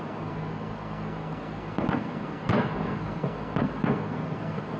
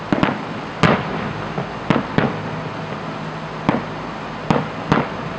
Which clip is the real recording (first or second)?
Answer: second